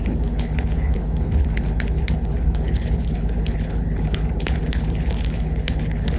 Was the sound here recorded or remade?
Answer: remade